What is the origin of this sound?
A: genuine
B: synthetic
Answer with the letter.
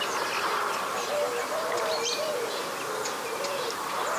A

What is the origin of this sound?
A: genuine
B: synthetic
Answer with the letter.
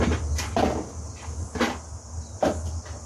A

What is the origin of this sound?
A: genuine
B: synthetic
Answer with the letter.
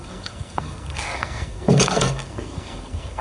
B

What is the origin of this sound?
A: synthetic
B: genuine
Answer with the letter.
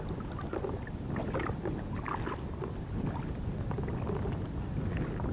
B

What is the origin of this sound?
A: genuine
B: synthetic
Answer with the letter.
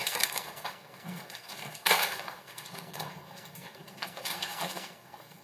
B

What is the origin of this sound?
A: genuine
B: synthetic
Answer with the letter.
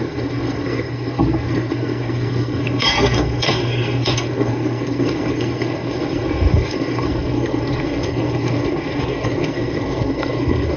B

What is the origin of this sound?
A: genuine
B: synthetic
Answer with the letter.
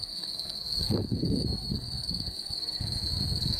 B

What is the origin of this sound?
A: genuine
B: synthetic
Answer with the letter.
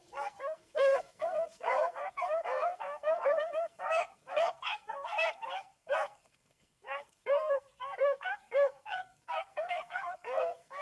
B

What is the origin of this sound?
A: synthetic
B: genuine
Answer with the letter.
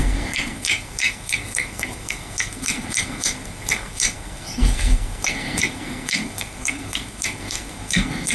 A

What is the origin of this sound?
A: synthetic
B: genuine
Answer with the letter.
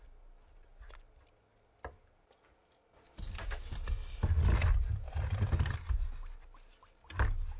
B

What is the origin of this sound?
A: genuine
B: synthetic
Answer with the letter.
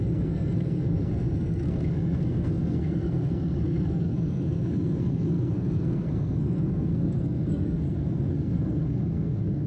B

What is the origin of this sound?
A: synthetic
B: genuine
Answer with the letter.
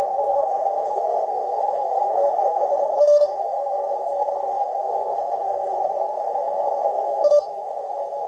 A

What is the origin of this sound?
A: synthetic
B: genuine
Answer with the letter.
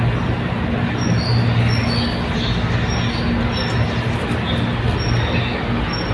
B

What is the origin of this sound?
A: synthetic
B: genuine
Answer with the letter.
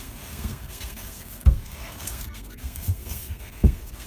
A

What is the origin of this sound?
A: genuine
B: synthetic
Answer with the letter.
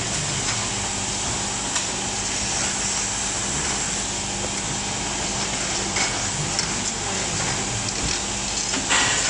A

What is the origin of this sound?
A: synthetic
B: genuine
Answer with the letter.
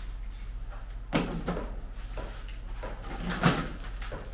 B